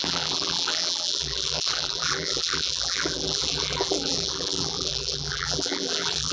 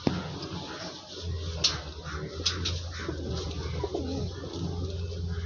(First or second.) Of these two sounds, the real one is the second